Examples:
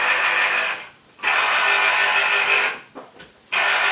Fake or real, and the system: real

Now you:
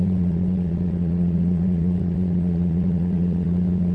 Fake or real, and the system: fake, vocoder, WaveNeXt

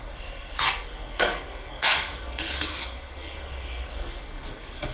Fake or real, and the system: fake, codec, SNAC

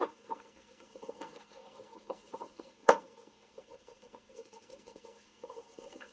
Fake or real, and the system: fake, codec, SNAC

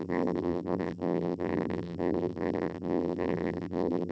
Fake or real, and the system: fake, vocoder, BigVGAN v2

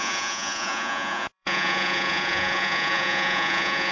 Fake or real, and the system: fake, vocoder, Vocos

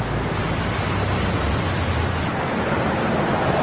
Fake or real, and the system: fake, vocoder, BigVGAN v2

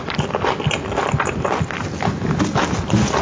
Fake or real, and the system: real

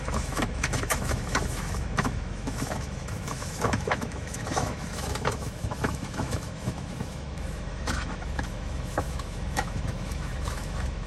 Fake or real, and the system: fake, autoencoder, DAC-VAE